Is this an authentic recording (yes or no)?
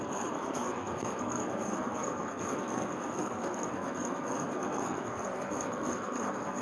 no